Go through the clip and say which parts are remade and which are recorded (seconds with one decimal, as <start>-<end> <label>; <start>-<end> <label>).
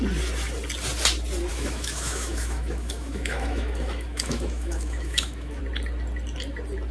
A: 0.0-1.5 recorded; 1.5-5.6 remade; 5.6-6.9 recorded